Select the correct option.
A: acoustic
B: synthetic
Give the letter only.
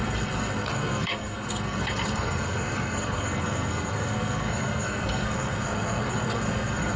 B